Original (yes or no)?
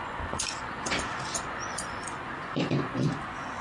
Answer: no